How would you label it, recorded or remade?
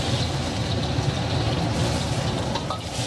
recorded